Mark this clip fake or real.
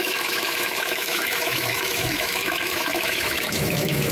fake